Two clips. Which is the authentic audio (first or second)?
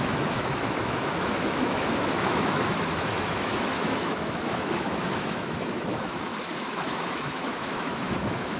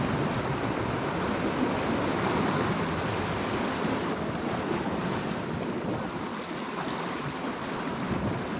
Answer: second